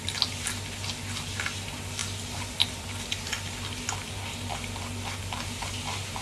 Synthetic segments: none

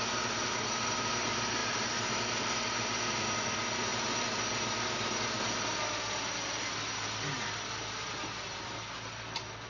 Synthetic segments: none

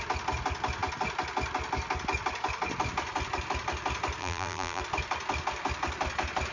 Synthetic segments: 4.2-4.8 (vocoder, BigVGAN v2)

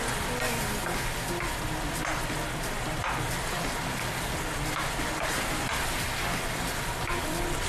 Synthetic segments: 2.1-5.5 (vocoder, BigVGAN v2)

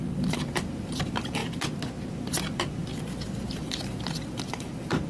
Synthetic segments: 0.0-1.4 (vocoder, BigVGAN v2); 2.1-2.9; 3.5-5.1